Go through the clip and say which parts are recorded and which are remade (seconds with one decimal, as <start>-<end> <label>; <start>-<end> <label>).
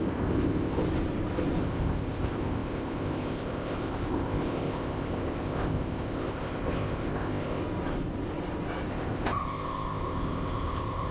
0.0-0.8 remade; 0.8-1.6 recorded; 1.6-7.6 remade; 7.6-8.9 recorded; 8.9-11.1 remade